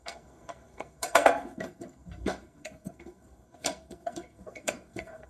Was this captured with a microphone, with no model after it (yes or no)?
no